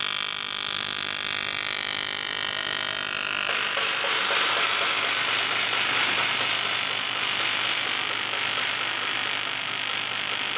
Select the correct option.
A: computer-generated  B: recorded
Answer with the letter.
B